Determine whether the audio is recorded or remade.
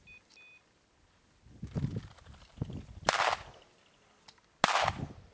recorded